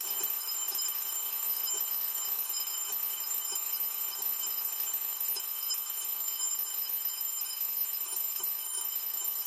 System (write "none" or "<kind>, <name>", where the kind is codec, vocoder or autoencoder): autoencoder, DAC-VAE